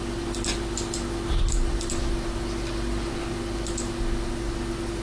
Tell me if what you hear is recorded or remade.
recorded